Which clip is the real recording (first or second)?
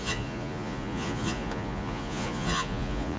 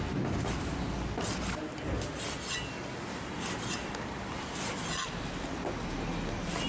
second